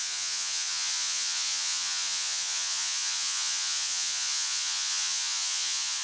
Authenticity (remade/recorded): remade